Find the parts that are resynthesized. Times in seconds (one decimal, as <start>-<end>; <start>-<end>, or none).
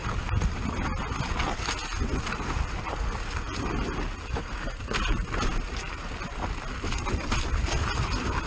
none